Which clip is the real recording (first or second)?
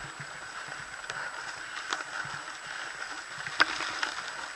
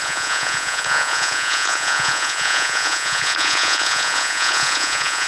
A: first